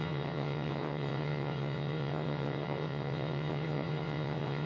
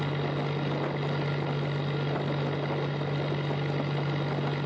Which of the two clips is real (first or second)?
second